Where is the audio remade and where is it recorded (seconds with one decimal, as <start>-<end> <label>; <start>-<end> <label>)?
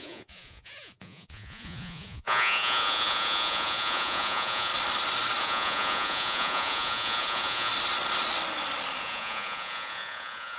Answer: 0.0-4.7 remade; 4.7-5.4 recorded; 5.4-7.7 remade; 7.7-9.0 recorded; 9.0-10.6 remade